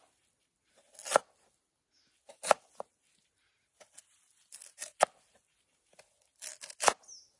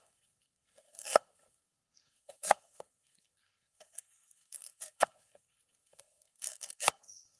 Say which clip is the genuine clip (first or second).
first